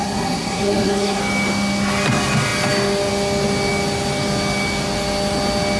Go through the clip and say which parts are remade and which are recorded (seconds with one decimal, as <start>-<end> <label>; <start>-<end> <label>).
0.0-1.2 remade; 1.2-5.8 recorded